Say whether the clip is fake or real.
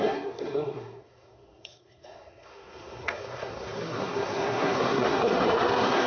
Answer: fake